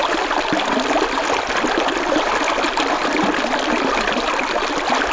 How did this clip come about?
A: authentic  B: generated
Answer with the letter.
A